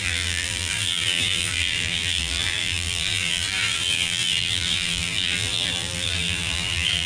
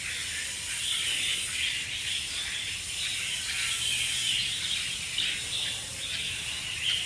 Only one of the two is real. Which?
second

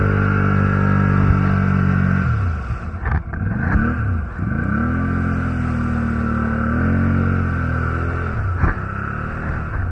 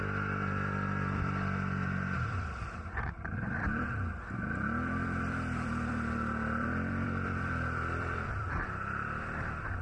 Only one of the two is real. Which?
first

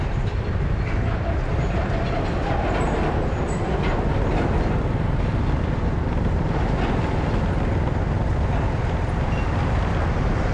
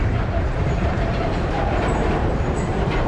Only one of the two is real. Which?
first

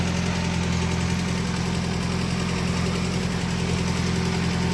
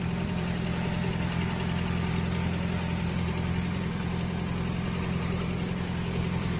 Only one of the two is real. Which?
first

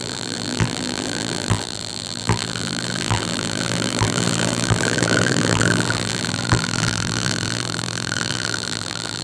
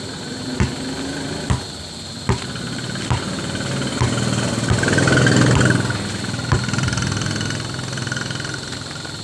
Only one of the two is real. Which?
second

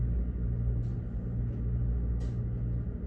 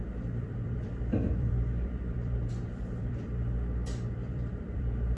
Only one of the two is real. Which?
first